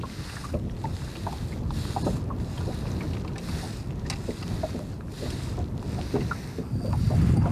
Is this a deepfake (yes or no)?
no